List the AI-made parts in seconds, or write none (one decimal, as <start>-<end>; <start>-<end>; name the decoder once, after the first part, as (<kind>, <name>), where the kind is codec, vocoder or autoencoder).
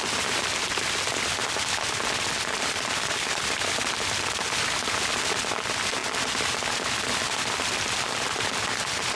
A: none